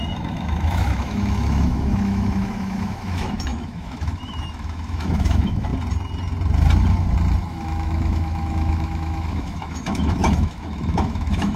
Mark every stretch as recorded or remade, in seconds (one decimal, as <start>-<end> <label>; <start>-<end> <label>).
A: 0.0-5.7 remade; 5.7-7.5 recorded; 7.5-11.6 remade

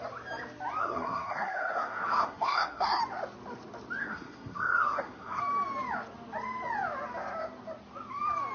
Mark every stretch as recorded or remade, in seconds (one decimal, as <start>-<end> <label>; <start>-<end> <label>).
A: 0.0-0.8 recorded; 0.8-3.0 remade; 3.0-4.0 recorded; 4.0-5.4 remade; 5.4-8.5 recorded

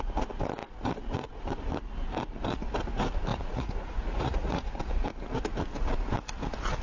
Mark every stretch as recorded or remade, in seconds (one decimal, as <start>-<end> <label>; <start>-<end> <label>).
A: 0.0-3.3 recorded; 3.3-4.7 remade; 4.7-6.8 recorded

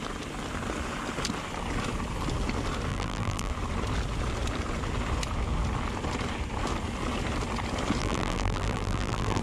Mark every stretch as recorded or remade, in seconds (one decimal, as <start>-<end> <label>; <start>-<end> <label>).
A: 0.0-2.9 recorded; 2.9-3.5 remade; 3.5-8.0 recorded; 8.0-9.4 remade

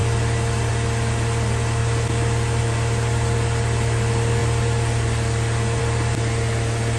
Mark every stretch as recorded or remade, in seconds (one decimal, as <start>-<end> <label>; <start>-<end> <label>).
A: 0.0-7.0 recorded